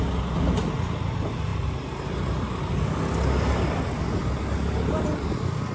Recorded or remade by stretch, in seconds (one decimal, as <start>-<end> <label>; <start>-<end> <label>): 0.0-5.7 recorded